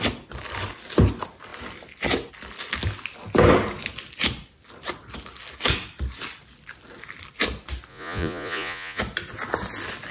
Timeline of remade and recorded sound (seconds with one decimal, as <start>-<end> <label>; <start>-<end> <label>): 0.0-7.9 recorded; 7.9-9.0 remade; 9.0-10.1 recorded